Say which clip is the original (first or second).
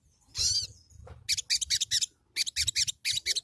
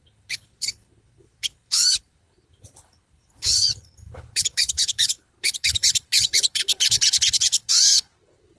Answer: first